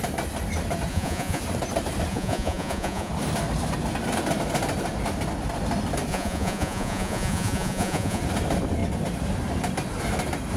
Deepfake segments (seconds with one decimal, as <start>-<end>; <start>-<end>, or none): 0.9-1.4; 2.1-3.1; 6.1-8.2